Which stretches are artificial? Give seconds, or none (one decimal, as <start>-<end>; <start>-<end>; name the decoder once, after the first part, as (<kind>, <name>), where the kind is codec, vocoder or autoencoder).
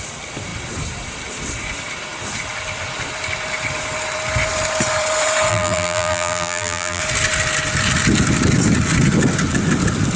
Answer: 5.5-7.0 (vocoder, BigVGAN v2)